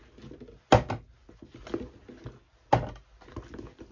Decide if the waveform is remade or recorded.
recorded